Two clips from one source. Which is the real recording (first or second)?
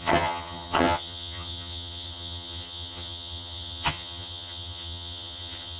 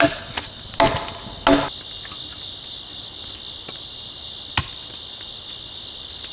second